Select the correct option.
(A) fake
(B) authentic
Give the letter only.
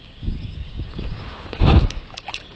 A